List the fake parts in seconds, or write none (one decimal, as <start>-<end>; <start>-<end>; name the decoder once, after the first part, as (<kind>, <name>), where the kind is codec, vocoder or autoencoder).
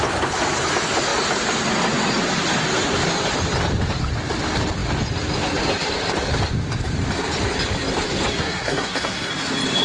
8.3-9.3 (codec, SNAC)